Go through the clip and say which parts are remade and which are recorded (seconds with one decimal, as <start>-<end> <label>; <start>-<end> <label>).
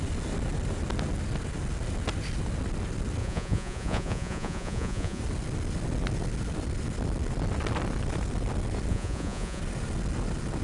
0.0-3.2 recorded; 3.2-5.2 remade; 5.2-8.9 recorded; 8.9-9.6 remade; 9.6-10.6 recorded